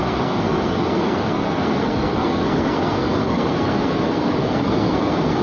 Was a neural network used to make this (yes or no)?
yes